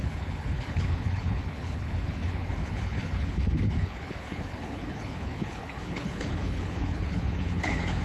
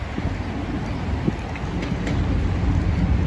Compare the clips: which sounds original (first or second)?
second